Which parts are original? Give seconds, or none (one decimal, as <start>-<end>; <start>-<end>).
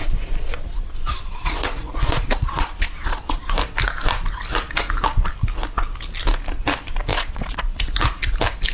3.5-7.1; 7.6-8.7